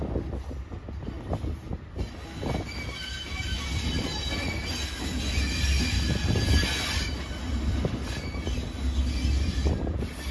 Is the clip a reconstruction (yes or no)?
no